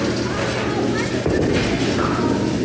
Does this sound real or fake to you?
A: real